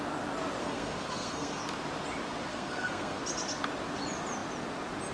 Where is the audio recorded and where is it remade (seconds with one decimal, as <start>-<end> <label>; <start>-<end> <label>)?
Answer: 0.0-0.6 recorded; 0.6-1.6 remade; 1.6-2.5 recorded; 2.5-3.2 remade; 3.2-5.1 recorded